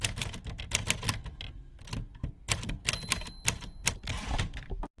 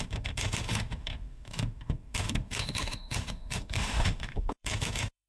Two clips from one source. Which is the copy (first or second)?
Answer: second